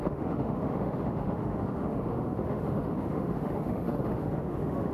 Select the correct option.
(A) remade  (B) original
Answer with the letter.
A